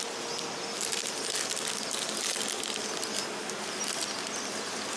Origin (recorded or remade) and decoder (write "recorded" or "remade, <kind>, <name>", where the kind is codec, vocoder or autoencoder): recorded